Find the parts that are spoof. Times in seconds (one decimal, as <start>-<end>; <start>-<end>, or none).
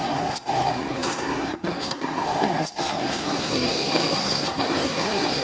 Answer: 0.0-5.4